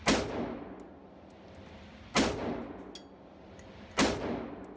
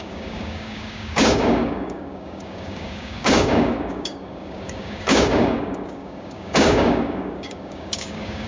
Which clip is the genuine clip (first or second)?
first